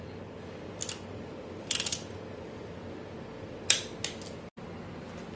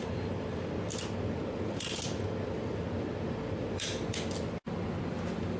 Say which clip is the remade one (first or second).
second